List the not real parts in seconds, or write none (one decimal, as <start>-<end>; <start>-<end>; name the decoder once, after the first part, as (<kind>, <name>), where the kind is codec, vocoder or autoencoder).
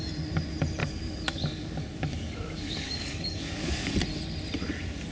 0.8-3.9 (codec, DAC)